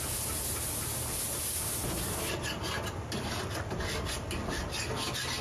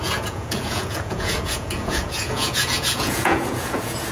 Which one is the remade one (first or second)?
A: second